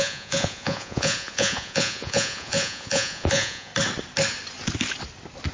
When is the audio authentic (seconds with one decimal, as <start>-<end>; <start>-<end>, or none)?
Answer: 3.7-5.5